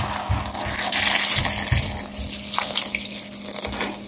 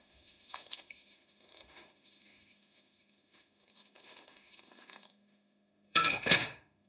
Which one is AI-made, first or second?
second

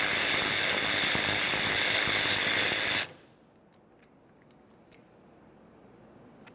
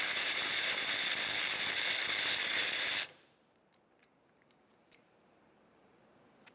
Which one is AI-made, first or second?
second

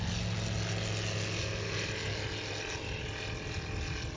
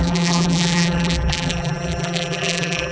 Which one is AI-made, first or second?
second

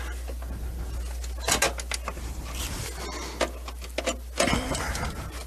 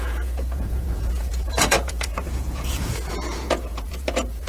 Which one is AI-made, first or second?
second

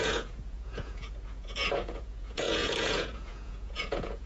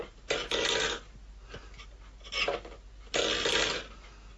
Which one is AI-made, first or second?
first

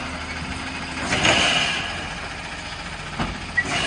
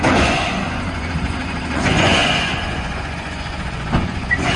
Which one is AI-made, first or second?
second